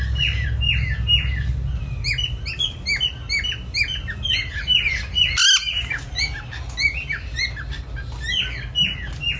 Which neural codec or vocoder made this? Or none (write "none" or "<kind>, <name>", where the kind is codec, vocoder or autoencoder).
none